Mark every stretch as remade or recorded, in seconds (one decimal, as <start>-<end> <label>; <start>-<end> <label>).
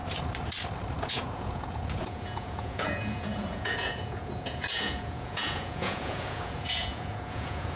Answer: 0.0-1.1 recorded; 1.1-7.8 remade